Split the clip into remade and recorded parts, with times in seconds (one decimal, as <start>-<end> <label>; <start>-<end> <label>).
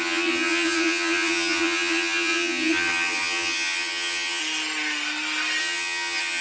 0.0-4.4 remade; 4.4-5.6 recorded; 5.6-6.4 remade